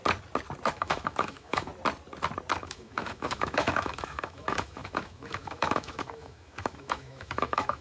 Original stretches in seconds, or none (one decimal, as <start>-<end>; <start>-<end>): 0.0-0.7; 1.7-2.6